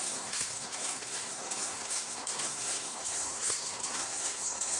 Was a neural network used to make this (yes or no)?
yes